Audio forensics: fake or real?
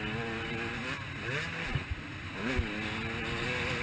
real